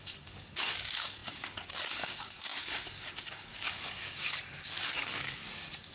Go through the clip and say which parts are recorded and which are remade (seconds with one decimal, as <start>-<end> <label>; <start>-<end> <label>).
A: 0.0-5.9 remade